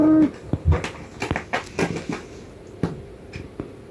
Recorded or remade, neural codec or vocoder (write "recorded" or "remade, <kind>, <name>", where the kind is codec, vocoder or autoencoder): recorded